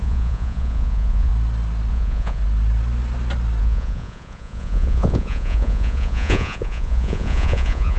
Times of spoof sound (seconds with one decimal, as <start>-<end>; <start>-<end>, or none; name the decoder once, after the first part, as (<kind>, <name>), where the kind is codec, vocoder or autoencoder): 0.0-1.3 (vocoder, Vocos); 1.9-2.4; 3.6-8.0